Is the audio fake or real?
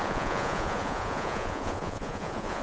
fake